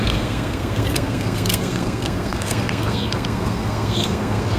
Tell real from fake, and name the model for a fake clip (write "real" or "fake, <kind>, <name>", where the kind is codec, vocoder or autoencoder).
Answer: fake, codec, SNAC